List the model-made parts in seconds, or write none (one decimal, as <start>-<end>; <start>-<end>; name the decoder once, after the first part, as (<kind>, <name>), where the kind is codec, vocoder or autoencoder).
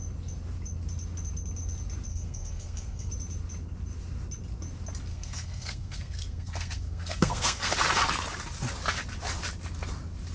2.1-3.1 (codec, SNAC); 5.1-7.7